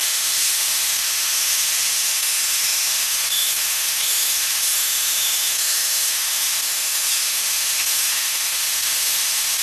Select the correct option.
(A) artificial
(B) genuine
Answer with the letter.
A